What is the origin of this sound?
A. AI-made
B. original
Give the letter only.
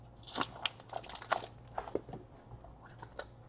B